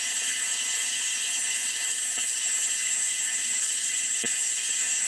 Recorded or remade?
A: remade